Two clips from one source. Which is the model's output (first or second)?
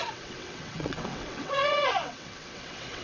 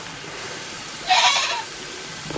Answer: first